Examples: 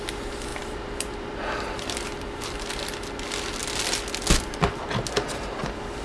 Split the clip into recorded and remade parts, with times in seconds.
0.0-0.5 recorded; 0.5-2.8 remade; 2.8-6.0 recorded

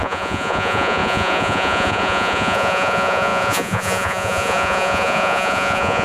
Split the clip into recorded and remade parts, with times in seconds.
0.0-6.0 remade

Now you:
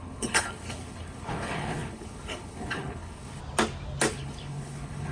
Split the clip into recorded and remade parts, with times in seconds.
0.0-3.4 remade; 3.4-4.1 recorded; 4.1-5.1 remade

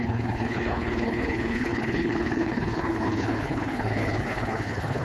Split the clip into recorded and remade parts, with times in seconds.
0.0-5.0 remade